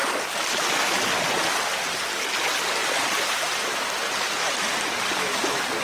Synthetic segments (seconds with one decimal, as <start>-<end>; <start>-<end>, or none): 0.0-0.6; 2.8-5.8